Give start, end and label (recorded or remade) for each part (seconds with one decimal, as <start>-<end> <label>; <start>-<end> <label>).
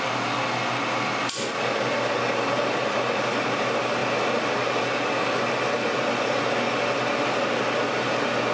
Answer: 0.0-8.5 recorded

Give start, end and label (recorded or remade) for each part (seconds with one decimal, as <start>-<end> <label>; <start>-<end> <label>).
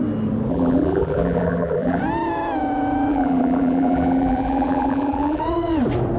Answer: 0.0-0.5 recorded; 0.5-2.0 remade; 2.0-3.1 recorded; 3.1-5.4 remade; 5.4-6.2 recorded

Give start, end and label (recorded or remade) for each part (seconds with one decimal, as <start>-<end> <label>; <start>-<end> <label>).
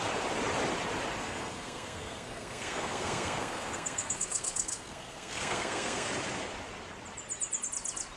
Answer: 0.0-1.2 recorded; 1.2-6.1 remade; 6.1-8.2 recorded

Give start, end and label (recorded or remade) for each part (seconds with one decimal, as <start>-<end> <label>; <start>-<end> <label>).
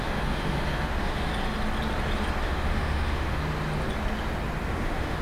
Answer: 0.0-1.3 remade; 1.3-2.4 recorded; 2.4-3.4 remade; 3.4-4.7 recorded; 4.7-5.2 remade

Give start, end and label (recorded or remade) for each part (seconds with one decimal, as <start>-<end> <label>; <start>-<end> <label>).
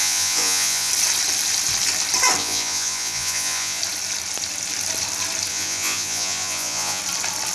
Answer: 0.0-0.9 remade; 0.9-2.4 recorded; 2.4-3.8 remade; 3.8-5.5 recorded; 5.5-7.0 remade; 7.0-7.5 recorded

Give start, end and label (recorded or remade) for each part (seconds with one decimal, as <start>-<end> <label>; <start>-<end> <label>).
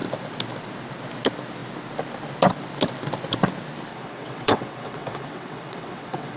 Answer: 0.0-3.9 recorded; 3.9-6.4 remade